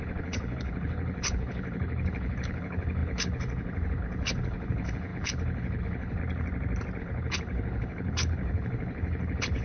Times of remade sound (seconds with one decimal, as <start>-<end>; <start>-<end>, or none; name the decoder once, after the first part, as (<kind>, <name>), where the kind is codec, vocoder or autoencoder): 0.0-6.2 (codec, HILCodec); 7.0-9.6